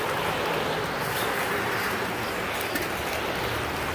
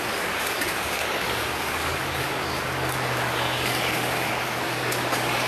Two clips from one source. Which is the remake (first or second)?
second